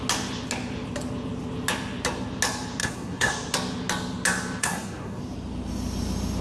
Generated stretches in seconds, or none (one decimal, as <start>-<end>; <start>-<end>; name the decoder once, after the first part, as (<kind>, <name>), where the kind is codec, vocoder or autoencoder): 2.8-3.3 (codec, SNAC); 4.6-5.2